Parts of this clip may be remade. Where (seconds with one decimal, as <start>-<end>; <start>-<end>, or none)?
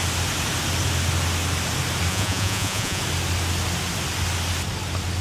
2.1-3.0